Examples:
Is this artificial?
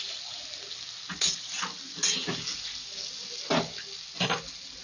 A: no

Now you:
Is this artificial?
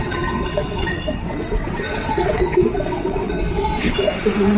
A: yes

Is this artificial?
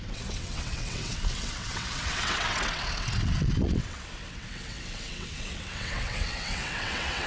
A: yes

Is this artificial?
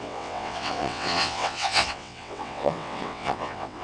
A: yes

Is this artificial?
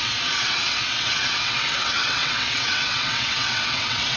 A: yes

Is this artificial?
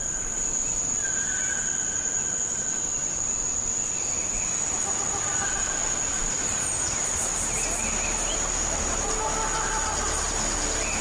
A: no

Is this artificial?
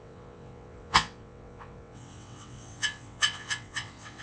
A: yes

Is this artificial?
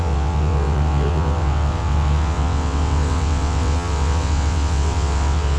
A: yes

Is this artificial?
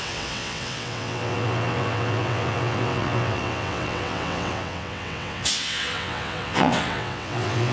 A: yes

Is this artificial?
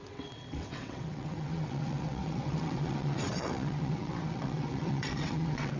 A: yes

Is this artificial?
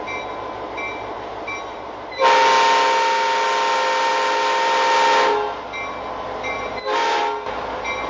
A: no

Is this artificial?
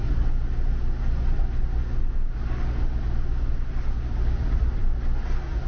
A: no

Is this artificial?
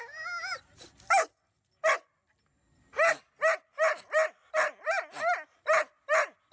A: no